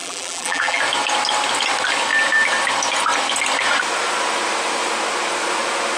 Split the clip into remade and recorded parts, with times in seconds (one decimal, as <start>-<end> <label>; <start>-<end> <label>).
0.0-0.8 remade; 0.8-6.0 recorded